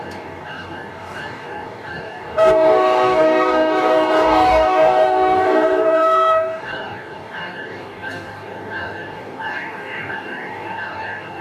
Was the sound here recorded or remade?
remade